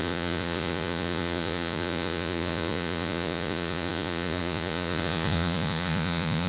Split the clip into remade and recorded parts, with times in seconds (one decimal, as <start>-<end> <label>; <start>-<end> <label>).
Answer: 0.0-6.5 remade